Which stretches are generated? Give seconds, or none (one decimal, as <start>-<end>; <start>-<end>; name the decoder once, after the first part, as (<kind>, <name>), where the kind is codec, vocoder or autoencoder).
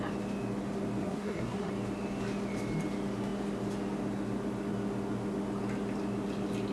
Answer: 1.0-1.7 (codec, SNAC)